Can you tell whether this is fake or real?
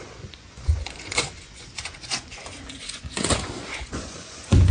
fake